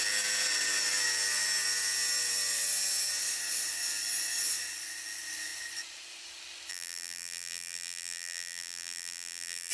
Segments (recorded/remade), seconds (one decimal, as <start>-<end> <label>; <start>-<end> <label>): 0.0-6.7 recorded; 6.7-9.7 remade